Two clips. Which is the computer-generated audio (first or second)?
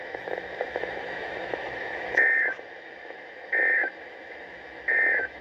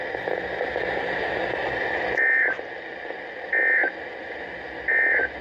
first